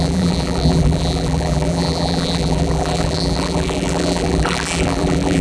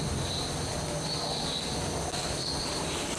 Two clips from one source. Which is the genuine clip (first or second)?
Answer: second